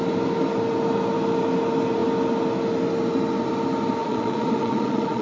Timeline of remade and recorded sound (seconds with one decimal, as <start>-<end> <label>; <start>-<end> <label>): 0.0-4.0 recorded; 4.0-5.2 remade